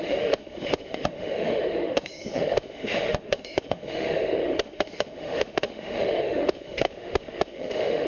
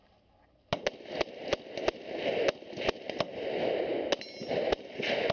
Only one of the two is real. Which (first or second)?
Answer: second